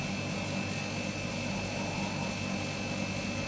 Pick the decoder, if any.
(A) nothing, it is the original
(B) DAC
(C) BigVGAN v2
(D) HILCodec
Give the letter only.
A